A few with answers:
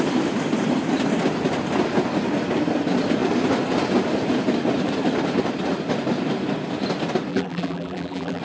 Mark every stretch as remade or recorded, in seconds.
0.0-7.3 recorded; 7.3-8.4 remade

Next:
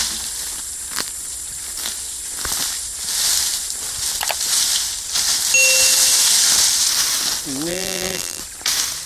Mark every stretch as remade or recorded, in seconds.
0.0-7.7 recorded; 7.7-8.4 remade; 8.4-9.1 recorded